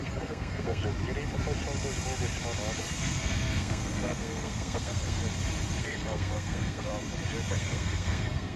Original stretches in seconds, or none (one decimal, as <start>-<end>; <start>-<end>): 0.8-2.8; 5.2-5.8; 6.9-7.5